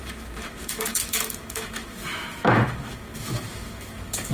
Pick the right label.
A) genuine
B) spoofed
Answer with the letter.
B